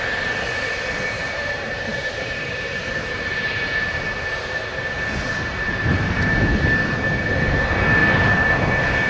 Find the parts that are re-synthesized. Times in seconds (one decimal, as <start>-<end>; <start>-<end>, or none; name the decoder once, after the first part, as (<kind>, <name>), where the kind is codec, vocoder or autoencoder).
1.2-3.7 (vocoder, BigVGAN v2); 5.9-6.7; 8.0-8.6